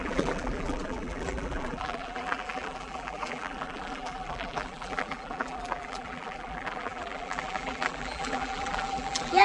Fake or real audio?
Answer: fake